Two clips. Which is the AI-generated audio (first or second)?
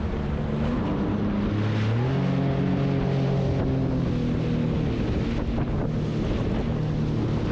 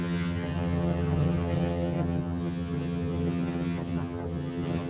second